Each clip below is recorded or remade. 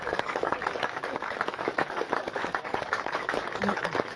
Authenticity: remade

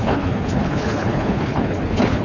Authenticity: remade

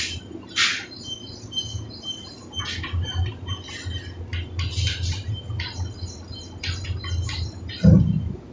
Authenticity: recorded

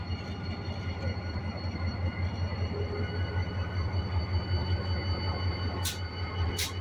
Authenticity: recorded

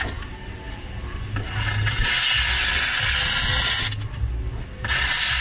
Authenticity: recorded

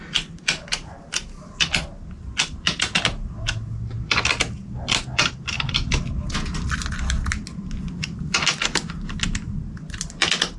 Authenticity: recorded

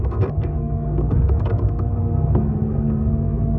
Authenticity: remade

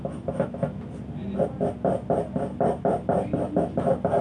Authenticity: recorded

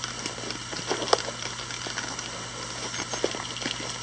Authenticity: recorded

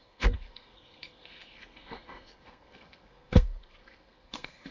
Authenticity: remade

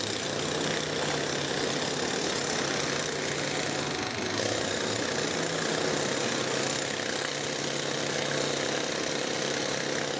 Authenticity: recorded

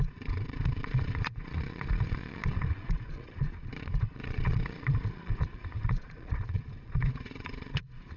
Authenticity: remade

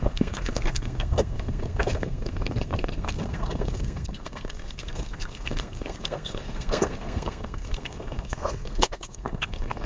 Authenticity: remade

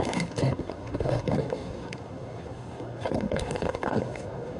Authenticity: remade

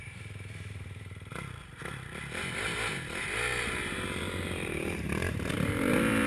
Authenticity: remade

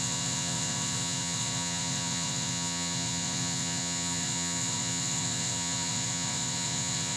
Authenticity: remade